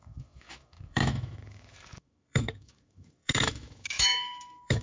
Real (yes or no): no